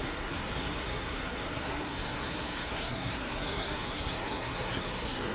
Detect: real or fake fake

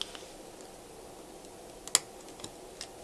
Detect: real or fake real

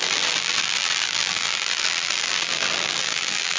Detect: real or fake fake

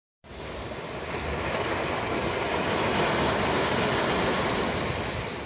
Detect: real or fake real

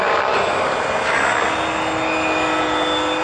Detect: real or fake real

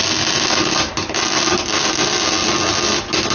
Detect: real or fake real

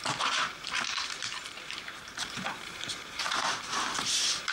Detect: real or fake fake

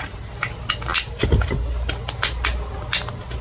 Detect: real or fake real